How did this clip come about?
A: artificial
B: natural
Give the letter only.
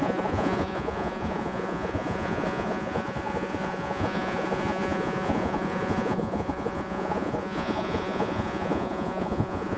A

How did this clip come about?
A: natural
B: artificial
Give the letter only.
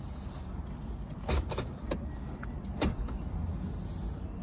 A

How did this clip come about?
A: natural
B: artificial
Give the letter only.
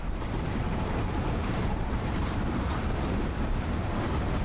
B